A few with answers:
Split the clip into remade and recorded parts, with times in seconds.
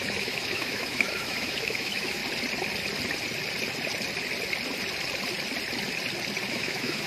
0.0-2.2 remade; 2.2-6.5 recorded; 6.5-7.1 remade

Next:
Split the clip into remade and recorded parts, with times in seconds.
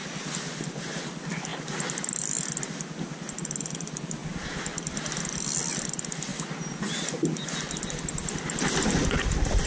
0.0-9.7 recorded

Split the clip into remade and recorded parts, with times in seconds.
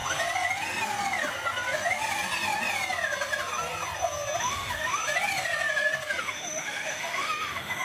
0.0-4.4 recorded; 4.4-5.0 remade; 5.0-6.2 recorded; 6.2-7.8 remade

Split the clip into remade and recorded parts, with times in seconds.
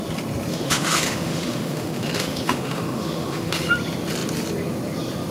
0.0-0.5 recorded; 0.5-3.7 remade; 3.7-5.3 recorded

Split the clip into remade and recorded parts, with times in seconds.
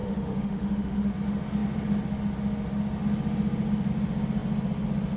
0.0-1.1 remade; 1.1-5.2 recorded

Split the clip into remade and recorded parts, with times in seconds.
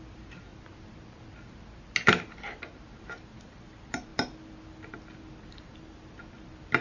0.0-6.8 recorded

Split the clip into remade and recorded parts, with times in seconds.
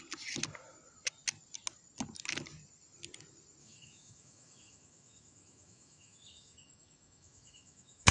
0.0-3.6 recorded; 3.6-8.1 remade